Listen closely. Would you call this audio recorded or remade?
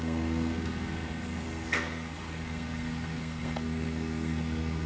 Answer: remade